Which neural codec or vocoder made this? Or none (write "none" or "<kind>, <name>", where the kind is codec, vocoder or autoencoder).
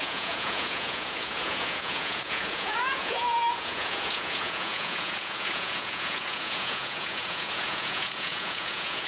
vocoder, Vocos